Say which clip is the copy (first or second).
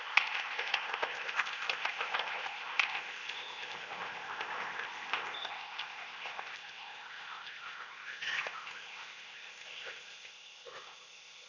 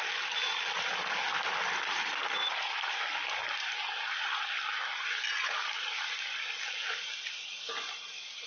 first